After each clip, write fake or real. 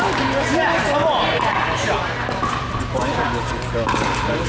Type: real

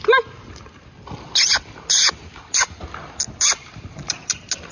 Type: real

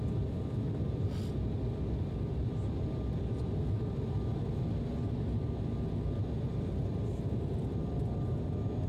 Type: real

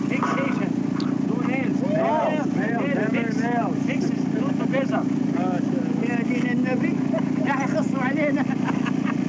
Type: real